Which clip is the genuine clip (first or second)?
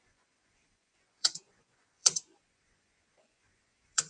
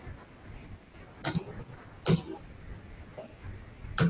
second